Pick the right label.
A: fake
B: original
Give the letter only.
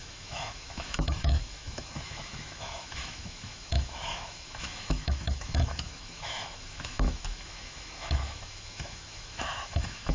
A